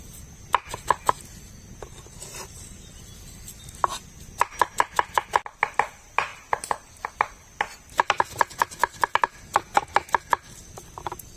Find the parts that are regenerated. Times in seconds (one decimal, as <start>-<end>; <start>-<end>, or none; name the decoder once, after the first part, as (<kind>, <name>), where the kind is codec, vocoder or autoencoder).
6.3-6.9 (vocoder, BigVGAN v2); 8.8-9.3